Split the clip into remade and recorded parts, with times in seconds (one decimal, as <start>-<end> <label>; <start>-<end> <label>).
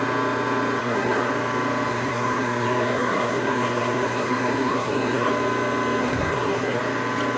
0.0-0.8 recorded; 0.8-1.3 remade; 1.3-1.9 recorded; 1.9-5.3 remade; 5.3-6.0 recorded; 6.0-6.8 remade; 6.8-7.4 recorded